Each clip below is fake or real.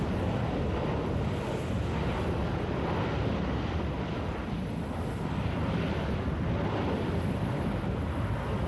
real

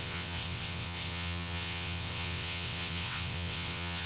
fake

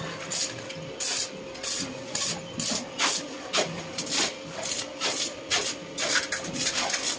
real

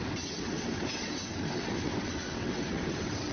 fake